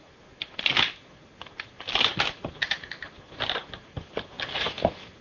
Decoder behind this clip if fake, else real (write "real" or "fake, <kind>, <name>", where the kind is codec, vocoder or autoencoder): real